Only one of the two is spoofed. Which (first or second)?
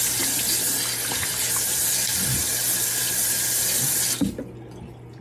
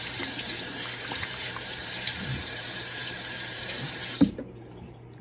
second